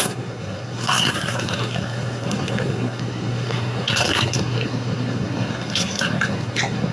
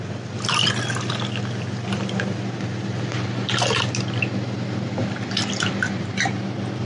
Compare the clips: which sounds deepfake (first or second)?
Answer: first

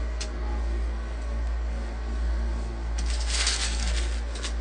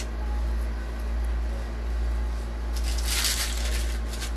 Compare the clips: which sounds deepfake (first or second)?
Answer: first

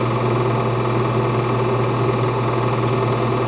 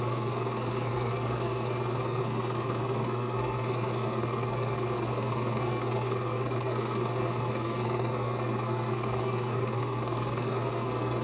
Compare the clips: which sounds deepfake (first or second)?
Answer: second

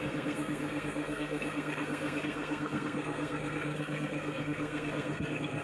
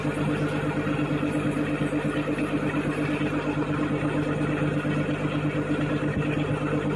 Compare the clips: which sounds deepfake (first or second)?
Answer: first